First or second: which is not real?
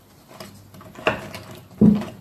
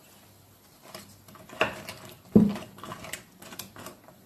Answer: second